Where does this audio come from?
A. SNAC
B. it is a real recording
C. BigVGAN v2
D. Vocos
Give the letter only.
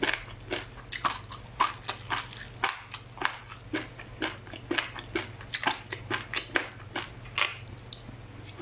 B